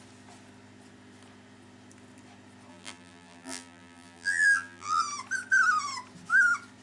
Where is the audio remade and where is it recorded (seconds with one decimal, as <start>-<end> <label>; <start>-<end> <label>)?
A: 0.0-2.7 recorded; 2.7-5.0 remade; 5.0-6.8 recorded